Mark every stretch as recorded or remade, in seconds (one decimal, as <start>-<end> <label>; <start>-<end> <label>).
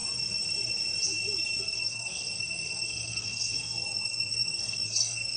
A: 0.0-1.6 recorded; 1.6-5.4 remade